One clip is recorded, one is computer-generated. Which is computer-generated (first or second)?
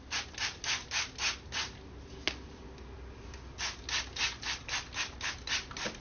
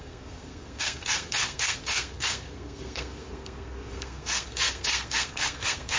second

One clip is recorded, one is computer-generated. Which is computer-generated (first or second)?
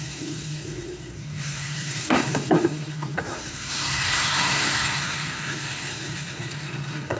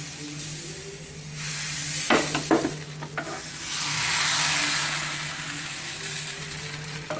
first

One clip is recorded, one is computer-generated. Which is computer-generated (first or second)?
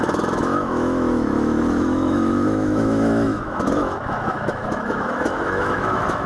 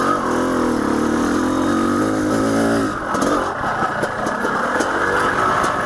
first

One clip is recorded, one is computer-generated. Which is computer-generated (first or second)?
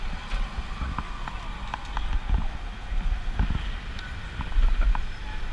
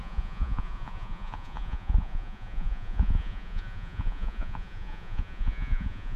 second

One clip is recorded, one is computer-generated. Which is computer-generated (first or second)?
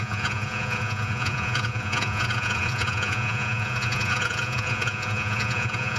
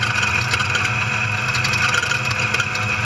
first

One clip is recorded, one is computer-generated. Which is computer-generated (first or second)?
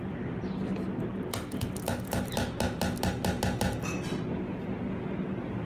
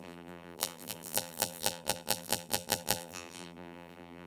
second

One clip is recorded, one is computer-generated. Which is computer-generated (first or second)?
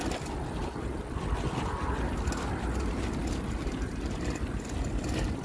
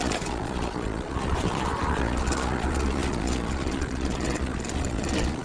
second